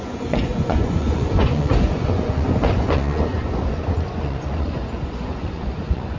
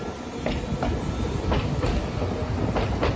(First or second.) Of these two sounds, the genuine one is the second